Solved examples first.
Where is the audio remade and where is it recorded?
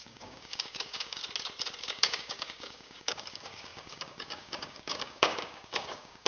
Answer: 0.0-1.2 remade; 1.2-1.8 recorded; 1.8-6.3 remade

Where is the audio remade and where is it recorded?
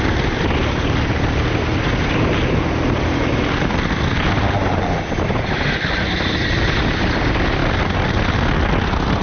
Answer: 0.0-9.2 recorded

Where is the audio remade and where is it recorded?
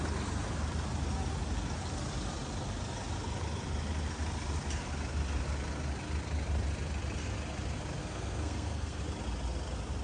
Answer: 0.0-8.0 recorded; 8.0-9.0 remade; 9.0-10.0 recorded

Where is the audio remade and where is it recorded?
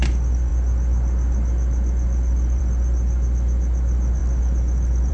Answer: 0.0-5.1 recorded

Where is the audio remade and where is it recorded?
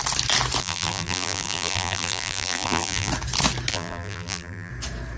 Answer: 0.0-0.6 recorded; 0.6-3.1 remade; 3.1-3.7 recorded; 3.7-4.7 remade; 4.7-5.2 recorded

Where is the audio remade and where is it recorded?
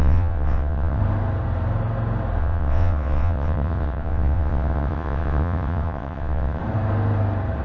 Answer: 0.0-1.0 remade; 1.0-2.4 recorded; 2.4-6.6 remade; 6.6-7.6 recorded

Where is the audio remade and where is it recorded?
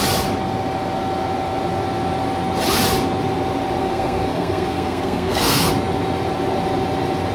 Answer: 0.0-3.8 recorded; 3.8-5.7 remade; 5.7-7.3 recorded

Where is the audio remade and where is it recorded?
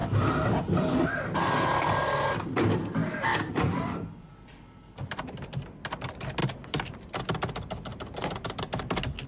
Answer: 0.0-1.9 remade; 1.9-6.4 recorded; 6.4-7.0 remade; 7.0-7.9 recorded; 7.9-8.6 remade; 8.6-9.3 recorded